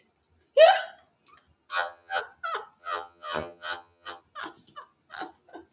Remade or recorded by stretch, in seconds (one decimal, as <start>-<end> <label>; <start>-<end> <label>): 0.0-1.7 recorded; 1.7-2.2 remade; 2.2-2.8 recorded; 2.8-4.2 remade; 4.2-5.7 recorded